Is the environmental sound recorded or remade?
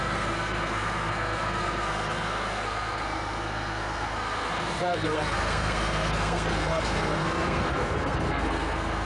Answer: remade